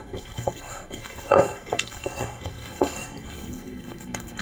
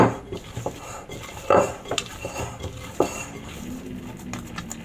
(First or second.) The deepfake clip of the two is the first